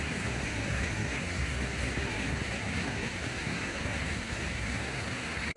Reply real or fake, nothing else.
fake